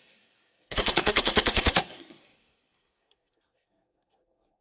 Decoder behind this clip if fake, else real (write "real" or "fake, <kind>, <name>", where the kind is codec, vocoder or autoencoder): fake, codec, SNAC